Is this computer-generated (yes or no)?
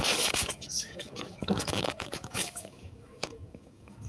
yes